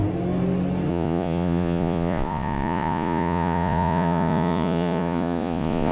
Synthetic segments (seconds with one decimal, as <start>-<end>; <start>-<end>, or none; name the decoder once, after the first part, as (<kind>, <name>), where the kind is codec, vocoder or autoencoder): 0.9-5.9 (vocoder, Vocos)